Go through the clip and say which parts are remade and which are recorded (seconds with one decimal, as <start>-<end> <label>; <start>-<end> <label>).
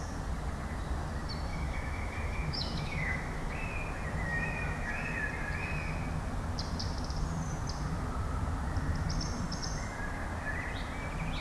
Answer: 0.0-1.5 recorded; 1.5-3.5 remade; 3.5-4.3 recorded; 4.3-4.9 remade; 4.9-11.4 recorded